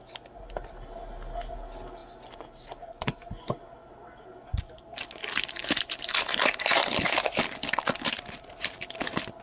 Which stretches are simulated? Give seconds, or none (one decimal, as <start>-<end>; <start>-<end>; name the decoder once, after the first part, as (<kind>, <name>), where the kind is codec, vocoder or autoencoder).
none